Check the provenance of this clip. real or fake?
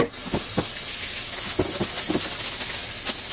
real